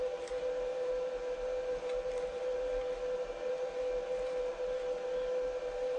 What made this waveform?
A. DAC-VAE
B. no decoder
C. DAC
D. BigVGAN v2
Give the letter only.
B